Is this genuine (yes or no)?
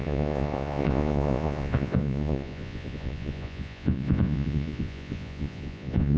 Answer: no